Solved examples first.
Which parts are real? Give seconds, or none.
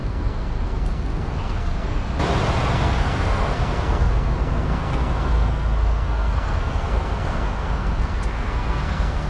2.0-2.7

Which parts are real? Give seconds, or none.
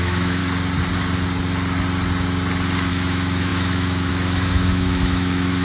0.4-2.9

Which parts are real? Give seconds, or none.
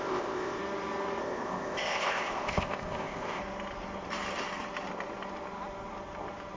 0.6-1.2; 3.4-6.6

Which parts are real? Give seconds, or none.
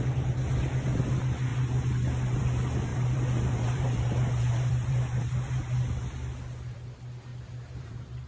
0.0-2.9; 5.3-7.3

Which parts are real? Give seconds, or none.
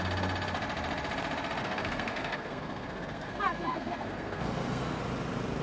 0.0-1.6; 5.0-5.6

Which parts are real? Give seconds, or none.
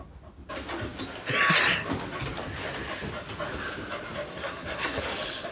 0.0-4.3; 5.0-5.5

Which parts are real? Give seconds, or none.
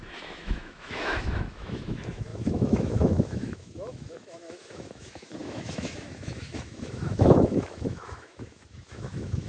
none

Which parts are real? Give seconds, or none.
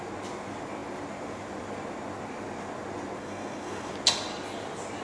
0.0-3.2; 3.9-5.0